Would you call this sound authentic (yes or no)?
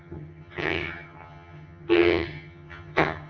no